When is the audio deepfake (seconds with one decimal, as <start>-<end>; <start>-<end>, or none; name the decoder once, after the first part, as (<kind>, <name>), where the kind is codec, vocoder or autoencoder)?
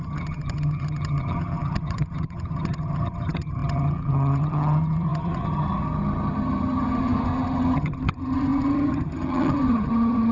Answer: 0.0-10.3 (vocoder, HiFi-GAN)